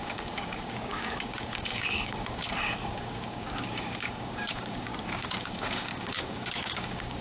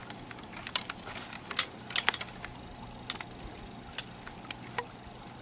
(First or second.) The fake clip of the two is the first